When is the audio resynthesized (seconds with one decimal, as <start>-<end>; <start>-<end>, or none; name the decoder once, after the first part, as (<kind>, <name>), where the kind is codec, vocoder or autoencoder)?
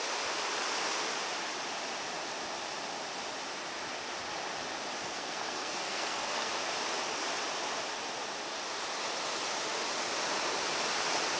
5.0-6.5 (codec, SNAC)